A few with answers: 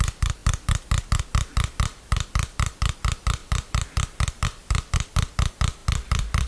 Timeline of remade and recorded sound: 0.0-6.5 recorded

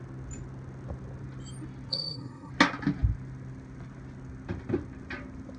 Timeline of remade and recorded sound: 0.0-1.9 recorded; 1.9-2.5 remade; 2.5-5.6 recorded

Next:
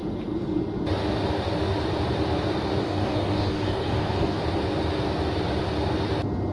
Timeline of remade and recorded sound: 0.0-2.8 recorded; 2.8-4.4 remade; 4.4-6.5 recorded

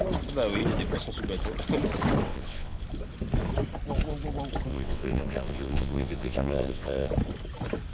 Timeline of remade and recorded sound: 0.0-2.3 recorded; 2.3-2.8 remade; 2.8-4.7 recorded; 4.7-7.1 remade; 7.1-7.9 recorded

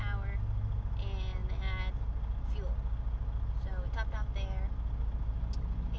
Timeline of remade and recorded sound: 0.0-6.0 recorded